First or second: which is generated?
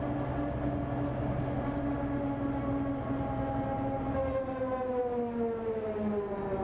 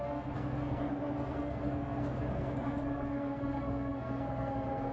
second